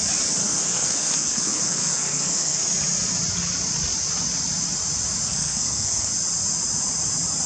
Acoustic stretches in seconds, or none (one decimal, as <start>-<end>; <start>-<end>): 0.0-0.4; 2.6-5.3; 6.1-7.5